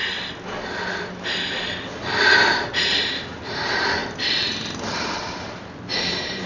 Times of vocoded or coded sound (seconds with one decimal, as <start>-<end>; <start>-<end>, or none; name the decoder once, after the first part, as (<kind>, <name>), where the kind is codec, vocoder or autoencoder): 3.1-4.0 (vocoder, BigVGAN v2); 4.9-6.5